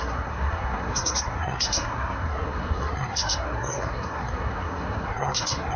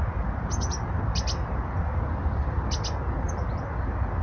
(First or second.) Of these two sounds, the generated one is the first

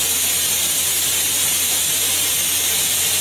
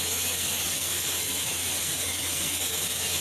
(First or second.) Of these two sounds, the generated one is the second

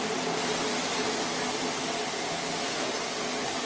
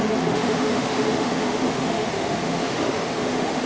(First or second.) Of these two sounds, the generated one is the second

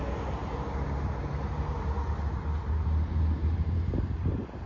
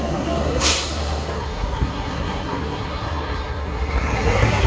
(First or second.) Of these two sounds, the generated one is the second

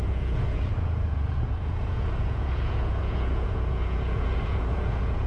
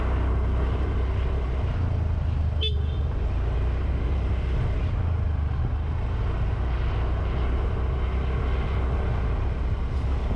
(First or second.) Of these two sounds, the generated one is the first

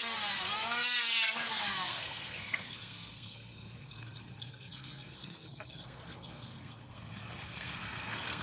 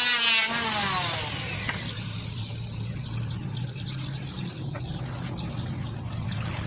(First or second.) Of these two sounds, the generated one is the first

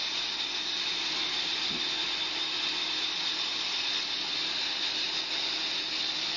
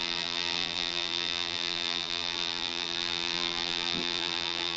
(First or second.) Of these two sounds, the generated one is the second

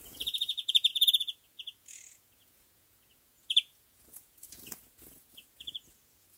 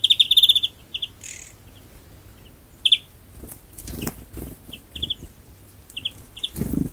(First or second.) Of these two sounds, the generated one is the first